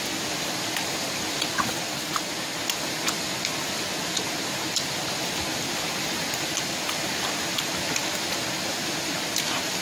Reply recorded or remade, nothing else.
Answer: recorded